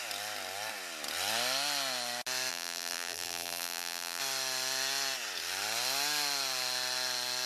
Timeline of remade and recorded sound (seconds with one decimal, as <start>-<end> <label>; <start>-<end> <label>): 0.0-2.5 recorded; 2.5-4.2 remade; 4.2-7.5 recorded